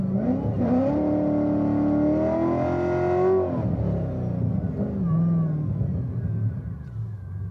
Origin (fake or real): real